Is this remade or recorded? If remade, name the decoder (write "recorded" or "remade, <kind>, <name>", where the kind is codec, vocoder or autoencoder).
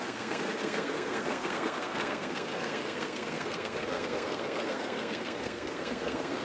remade, codec, SNAC